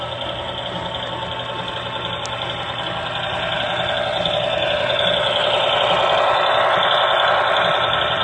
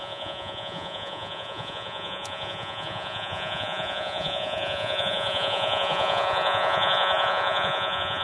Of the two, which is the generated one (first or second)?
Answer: second